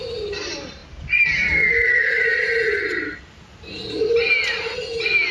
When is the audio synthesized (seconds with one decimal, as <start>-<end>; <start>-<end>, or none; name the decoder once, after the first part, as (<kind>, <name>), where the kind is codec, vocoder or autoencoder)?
none